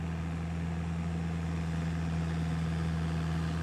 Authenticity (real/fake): real